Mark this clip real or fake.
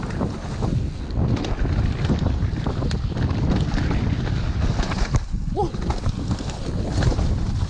real